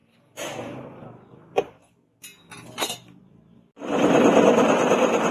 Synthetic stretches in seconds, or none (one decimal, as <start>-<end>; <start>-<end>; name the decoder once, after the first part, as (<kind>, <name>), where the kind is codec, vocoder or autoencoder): none